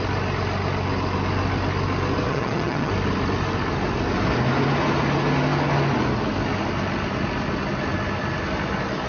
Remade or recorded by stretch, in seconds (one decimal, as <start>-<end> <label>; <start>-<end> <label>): 0.0-2.3 recorded; 2.3-2.9 remade; 2.9-9.1 recorded